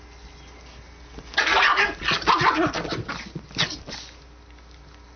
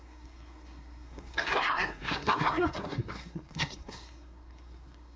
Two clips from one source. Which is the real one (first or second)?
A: first